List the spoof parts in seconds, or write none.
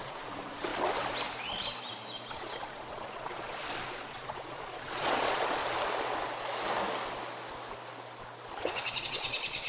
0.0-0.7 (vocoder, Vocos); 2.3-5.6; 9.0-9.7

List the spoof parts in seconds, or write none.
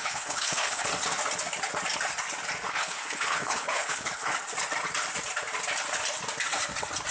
0.0-0.9 (codec, HILCodec); 2.7-4.3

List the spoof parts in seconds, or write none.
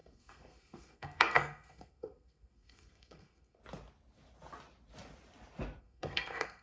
0.0-3.6 (codec, SNAC); 5.8-6.6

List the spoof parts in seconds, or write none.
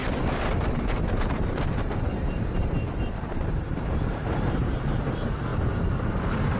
0.7-6.6 (vocoder, BigVGAN v2)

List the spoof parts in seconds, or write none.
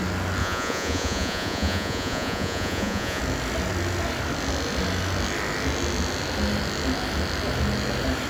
0.4-3.2 (vocoder, Vocos)